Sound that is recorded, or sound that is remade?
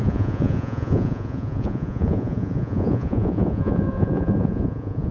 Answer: remade